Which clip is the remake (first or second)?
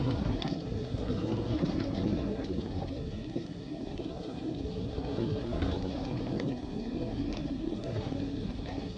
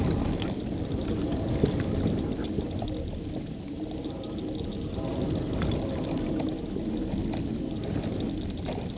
first